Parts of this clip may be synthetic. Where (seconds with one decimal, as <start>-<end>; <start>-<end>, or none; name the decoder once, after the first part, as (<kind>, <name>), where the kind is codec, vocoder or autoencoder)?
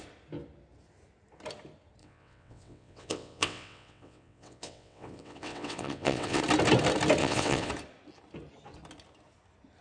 2.0-6.4 (vocoder, WaveNeXt); 7.2-7.7